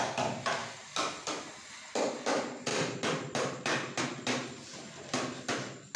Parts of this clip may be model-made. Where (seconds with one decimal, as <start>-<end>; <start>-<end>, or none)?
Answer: 0.6-1.8; 2.7-4.0